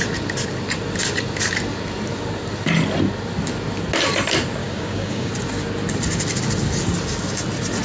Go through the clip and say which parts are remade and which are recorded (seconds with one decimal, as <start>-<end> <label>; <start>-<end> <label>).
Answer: 0.0-4.6 recorded; 4.6-5.3 remade; 5.3-7.8 recorded